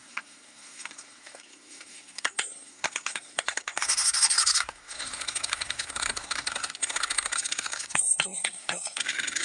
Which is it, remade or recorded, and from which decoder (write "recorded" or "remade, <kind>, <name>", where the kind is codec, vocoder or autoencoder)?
remade, codec, SNAC